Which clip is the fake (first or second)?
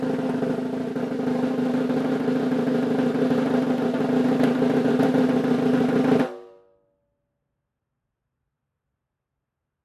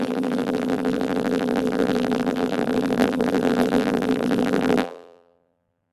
second